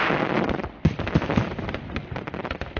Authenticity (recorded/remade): recorded